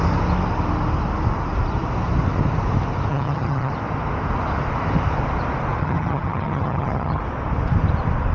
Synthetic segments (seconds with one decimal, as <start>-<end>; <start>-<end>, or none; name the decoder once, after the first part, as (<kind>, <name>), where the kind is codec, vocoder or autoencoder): 3.1-3.7 (vocoder, HiFi-GAN); 5.8-7.2